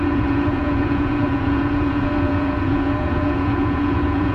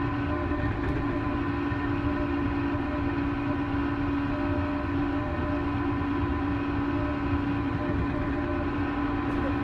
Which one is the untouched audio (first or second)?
second